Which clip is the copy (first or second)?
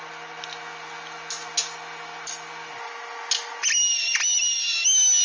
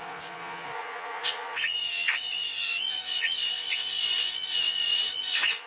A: second